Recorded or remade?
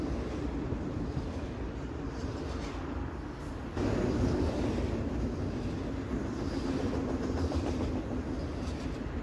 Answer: recorded